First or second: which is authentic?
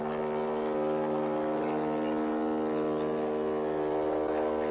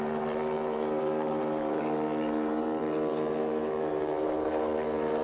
first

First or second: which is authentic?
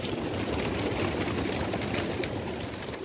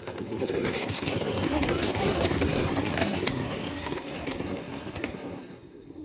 first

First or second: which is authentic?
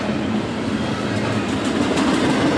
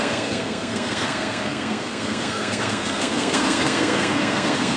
first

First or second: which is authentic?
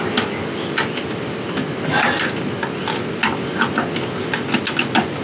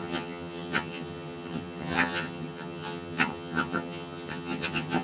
first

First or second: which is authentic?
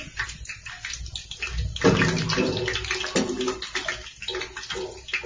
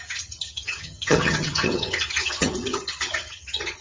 first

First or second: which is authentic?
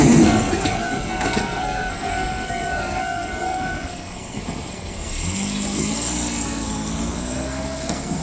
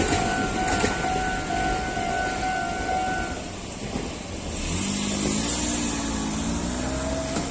second